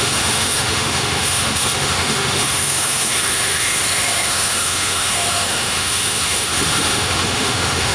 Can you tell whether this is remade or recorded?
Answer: remade